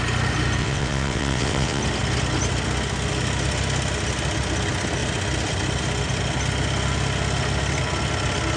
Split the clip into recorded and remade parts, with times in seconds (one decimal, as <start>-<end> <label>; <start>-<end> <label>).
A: 0.0-0.6 recorded; 0.6-1.8 remade; 1.8-8.6 recorded